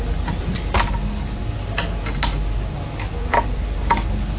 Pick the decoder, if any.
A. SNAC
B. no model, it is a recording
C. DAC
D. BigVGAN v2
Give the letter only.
B